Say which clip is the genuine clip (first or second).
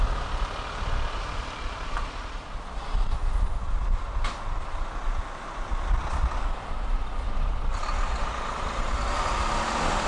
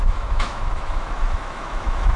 first